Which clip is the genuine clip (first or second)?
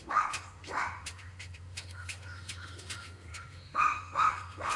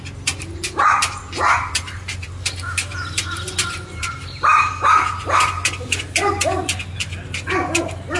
second